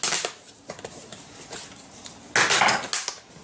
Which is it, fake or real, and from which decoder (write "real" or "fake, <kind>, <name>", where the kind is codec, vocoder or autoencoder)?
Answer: real